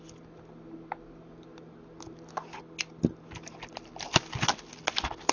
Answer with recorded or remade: recorded